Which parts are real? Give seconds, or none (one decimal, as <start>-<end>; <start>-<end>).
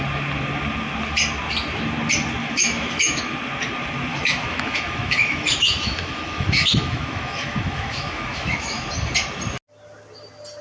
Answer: 0.0-2.4; 3.2-4.1; 8.9-10.6